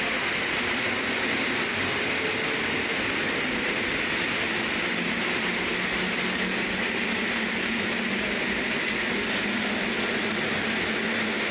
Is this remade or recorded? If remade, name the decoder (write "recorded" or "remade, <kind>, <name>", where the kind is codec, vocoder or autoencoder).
recorded